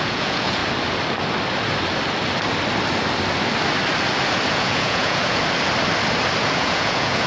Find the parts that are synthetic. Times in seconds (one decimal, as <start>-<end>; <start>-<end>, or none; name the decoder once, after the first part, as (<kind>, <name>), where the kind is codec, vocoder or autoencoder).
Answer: 0.0-0.6 (vocoder, Vocos); 4.5-5.4; 6.4-7.3